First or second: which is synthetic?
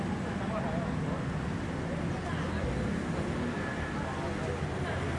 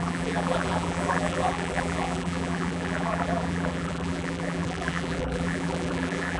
second